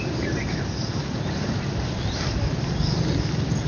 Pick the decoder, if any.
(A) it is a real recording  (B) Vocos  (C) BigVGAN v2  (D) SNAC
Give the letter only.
A